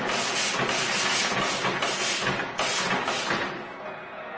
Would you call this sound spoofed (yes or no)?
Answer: no